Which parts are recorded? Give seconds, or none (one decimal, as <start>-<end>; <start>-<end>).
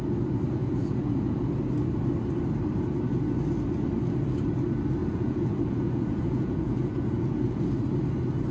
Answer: 0.0-0.6; 1.6-5.0; 7.6-8.5